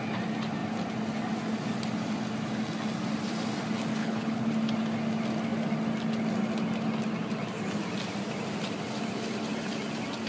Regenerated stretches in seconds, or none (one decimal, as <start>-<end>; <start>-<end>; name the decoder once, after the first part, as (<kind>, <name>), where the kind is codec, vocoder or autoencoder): 4.0-4.5 (codec, HILCodec)